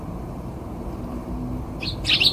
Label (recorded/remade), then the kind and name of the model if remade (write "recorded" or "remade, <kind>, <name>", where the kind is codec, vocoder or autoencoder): remade, vocoder, BigVGAN v2